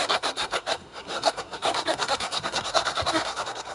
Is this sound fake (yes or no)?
yes